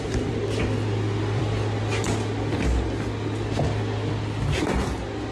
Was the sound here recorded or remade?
recorded